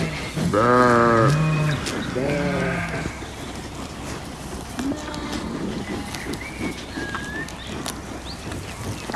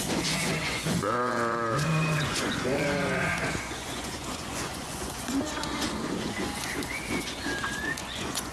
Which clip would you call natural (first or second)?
first